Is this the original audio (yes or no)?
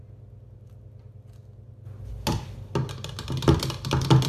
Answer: yes